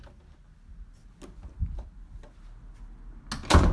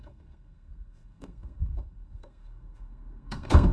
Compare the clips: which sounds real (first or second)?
first